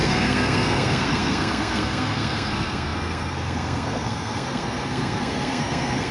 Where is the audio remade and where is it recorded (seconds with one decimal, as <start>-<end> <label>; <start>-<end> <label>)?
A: 0.0-6.1 remade